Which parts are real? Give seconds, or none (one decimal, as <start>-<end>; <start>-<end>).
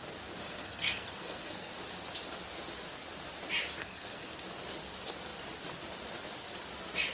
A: 0.0-0.4; 1.7-3.8; 4.4-7.1